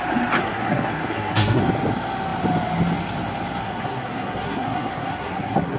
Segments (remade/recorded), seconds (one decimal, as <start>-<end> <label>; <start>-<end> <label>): 0.0-0.4 recorded; 0.4-1.6 remade; 1.6-3.6 recorded; 3.6-5.8 remade

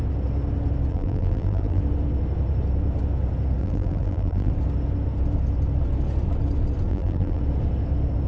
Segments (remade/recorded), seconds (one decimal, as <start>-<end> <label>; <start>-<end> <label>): 0.0-0.9 recorded; 0.9-1.8 remade; 1.8-3.6 recorded; 3.6-4.5 remade; 4.5-6.9 recorded; 6.9-7.4 remade; 7.4-8.3 recorded

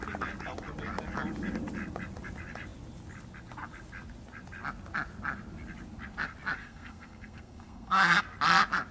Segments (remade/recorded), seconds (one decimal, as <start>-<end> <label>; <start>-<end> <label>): 0.0-6.6 recorded; 6.6-8.2 remade; 8.2-8.9 recorded

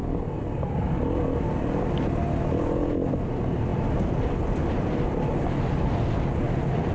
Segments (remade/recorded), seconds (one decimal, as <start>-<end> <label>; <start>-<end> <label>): 0.0-6.9 recorded

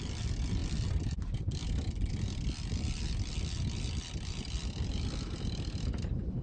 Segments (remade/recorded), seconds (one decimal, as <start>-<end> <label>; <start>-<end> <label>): 0.0-6.4 recorded

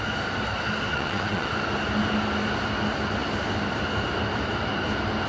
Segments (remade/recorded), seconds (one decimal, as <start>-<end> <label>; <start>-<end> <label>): 0.0-0.9 recorded; 0.9-1.5 remade; 1.5-5.3 recorded

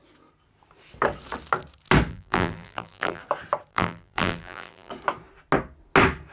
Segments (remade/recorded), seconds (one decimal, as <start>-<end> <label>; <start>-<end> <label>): 0.0-2.1 recorded; 2.1-3.2 remade; 3.2-3.7 recorded; 3.7-4.9 remade; 4.9-6.3 recorded